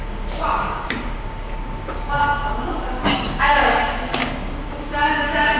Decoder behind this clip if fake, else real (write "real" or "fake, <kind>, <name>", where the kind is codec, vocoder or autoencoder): fake, codec, DAC